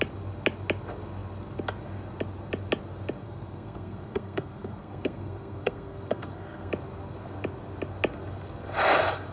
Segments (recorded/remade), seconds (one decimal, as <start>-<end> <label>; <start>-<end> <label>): 0.0-3.2 recorded; 3.2-6.7 remade; 6.7-9.3 recorded